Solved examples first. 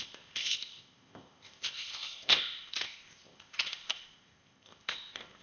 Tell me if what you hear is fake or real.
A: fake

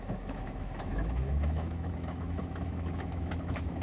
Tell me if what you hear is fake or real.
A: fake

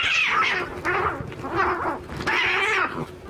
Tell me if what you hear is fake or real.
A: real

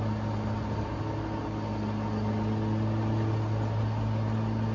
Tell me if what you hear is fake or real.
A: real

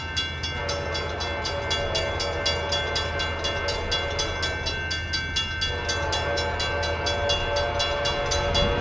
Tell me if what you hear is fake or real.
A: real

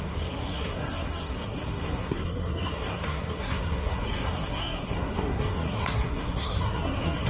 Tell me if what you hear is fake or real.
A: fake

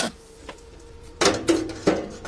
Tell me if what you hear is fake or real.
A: fake